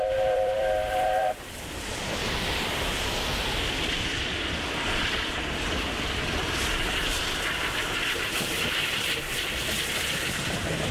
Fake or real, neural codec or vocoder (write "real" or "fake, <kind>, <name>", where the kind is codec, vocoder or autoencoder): fake, vocoder, BigVGAN v2